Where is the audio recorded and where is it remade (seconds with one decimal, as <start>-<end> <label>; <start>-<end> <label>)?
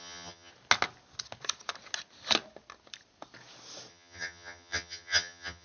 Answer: 0.0-0.5 remade; 0.5-3.9 recorded; 3.9-5.6 remade